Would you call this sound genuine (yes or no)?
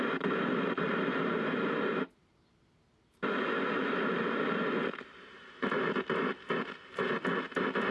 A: yes